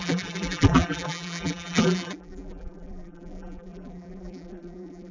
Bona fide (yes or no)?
no